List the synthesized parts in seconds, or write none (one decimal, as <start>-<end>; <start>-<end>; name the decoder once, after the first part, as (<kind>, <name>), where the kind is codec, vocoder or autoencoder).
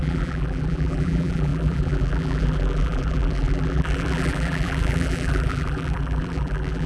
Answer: 0.0-6.9 (vocoder, BigVGAN v2)